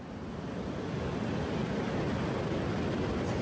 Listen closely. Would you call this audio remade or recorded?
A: recorded